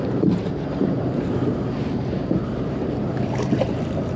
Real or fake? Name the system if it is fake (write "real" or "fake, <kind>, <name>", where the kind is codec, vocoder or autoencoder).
fake, vocoder, BigVGAN v2